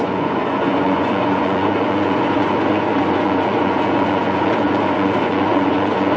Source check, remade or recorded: remade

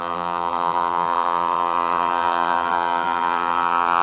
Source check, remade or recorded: remade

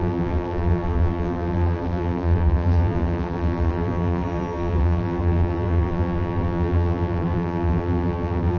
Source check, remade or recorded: remade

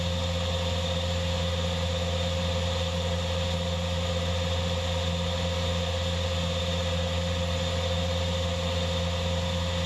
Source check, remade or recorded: recorded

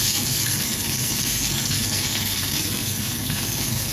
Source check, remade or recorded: remade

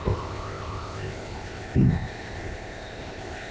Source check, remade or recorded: remade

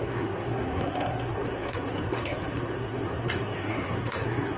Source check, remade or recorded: remade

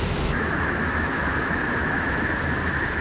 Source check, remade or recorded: remade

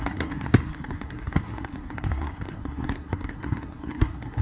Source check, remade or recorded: remade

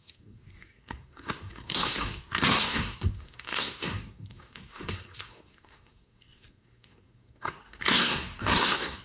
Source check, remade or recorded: remade